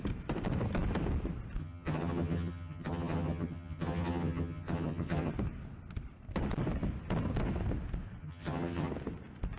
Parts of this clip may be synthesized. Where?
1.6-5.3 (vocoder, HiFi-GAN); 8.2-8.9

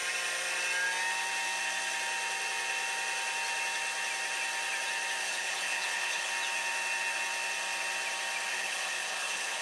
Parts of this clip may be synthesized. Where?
5.2-6.3 (codec, HILCodec); 8.5-9.6

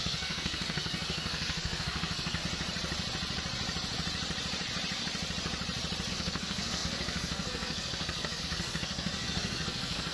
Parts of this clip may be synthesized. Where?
0.0-2.4 (codec, SNAC); 6.1-10.1

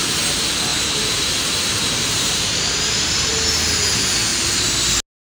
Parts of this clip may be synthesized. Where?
0.7-3.3 (vocoder, BigVGAN v2); 4.3-4.8

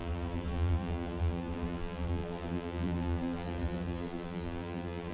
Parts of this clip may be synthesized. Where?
0.0-5.1 (vocoder, BigVGAN v2)

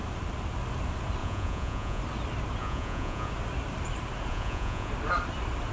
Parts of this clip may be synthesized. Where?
1.2-2.0 (vocoder, Vocos); 2.6-3.3; 4.3-4.9

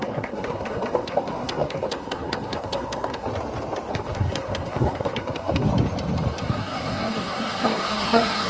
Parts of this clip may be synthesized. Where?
0.0-3.3 (codec, SNAC); 3.9-5.7; 6.4-8.5

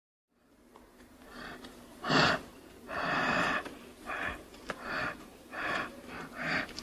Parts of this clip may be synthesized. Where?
0.0-6.8 (vocoder, BigVGAN v2)